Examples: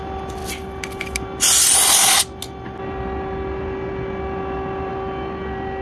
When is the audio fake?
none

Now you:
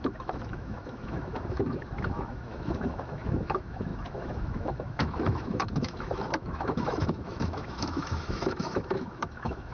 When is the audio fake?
0.0-9.7 (autoencoder, DAC-VAE)

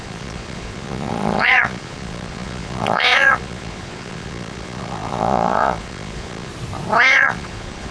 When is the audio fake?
0.0-6.5 (vocoder, Vocos); 7.1-7.9